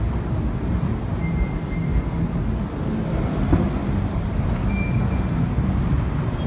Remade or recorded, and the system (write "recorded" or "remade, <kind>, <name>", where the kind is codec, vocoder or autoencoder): recorded